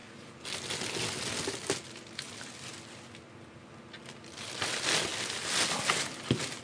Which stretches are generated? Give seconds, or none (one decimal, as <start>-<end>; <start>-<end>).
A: none